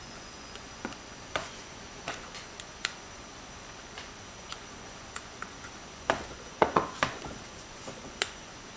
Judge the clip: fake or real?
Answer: fake